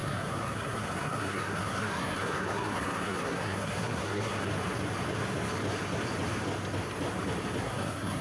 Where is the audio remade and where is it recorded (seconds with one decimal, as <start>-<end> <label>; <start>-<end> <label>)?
0.0-4.5 remade; 4.5-7.6 recorded; 7.6-8.2 remade